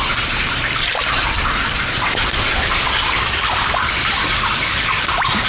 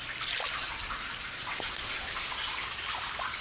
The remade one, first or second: first